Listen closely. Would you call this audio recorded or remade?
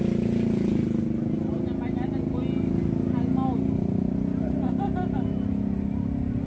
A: recorded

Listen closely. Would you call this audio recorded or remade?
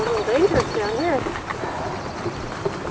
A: recorded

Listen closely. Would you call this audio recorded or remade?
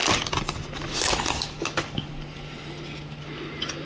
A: recorded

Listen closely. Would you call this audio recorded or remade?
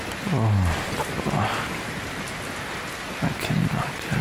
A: recorded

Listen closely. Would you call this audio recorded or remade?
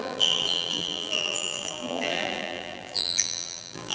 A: remade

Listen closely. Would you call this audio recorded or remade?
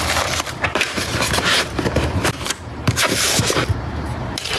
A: remade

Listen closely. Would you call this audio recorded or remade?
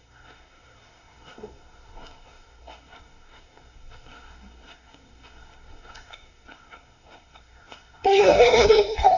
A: remade